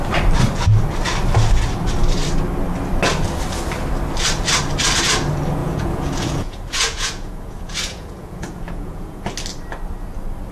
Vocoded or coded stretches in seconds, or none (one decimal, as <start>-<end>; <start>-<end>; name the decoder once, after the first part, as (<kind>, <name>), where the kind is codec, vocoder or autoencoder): 5.6-9.3 (vocoder, Vocos)